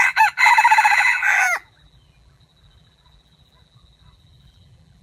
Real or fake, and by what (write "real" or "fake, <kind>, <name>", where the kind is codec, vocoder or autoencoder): fake, vocoder, BigVGAN v2